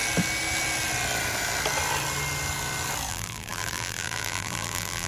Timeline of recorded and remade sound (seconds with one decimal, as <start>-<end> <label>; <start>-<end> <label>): 0.0-3.1 recorded; 3.1-5.1 remade